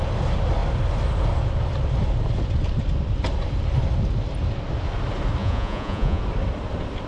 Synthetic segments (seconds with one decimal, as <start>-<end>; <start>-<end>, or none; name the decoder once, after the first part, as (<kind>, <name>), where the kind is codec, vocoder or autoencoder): 5.4-6.2 (vocoder, Vocos)